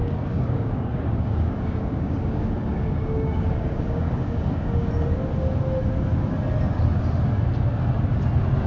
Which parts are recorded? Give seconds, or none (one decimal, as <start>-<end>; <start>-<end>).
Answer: 4.9-8.7

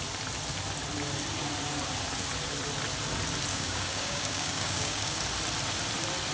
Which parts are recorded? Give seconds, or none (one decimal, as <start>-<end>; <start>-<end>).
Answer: 0.0-3.5; 5.2-6.3

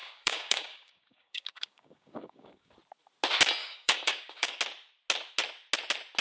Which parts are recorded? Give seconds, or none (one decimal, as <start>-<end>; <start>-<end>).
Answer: 2.7-3.6; 4.6-6.2

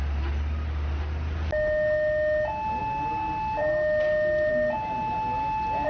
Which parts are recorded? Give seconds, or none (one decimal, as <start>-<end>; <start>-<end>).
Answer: 0.0-5.9

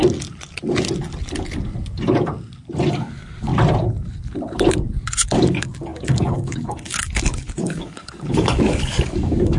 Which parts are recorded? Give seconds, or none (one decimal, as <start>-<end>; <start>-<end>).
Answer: 0.0-2.9; 3.5-5.1

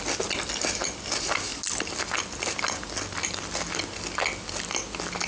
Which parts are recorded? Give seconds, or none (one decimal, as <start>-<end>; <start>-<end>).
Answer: 0.0-5.3